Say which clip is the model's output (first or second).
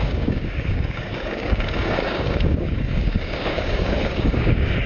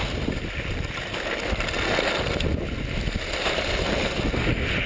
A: first